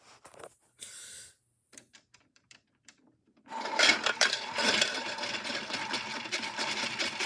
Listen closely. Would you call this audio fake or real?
fake